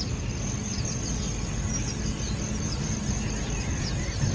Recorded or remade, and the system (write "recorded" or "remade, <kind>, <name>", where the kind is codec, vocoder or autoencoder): recorded